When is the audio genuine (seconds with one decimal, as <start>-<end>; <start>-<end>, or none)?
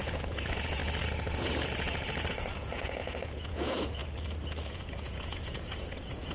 0.8-2.3; 4.0-4.7